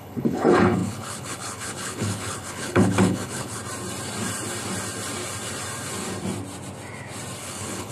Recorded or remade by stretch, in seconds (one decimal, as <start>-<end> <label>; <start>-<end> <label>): 0.0-3.6 remade; 3.6-7.4 recorded; 7.4-7.9 remade